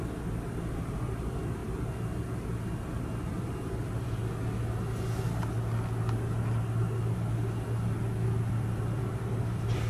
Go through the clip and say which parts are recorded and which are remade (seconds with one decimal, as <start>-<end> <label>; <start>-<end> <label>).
0.0-1.6 remade; 1.6-2.7 recorded; 2.7-4.2 remade; 4.2-8.5 recorded; 8.5-9.9 remade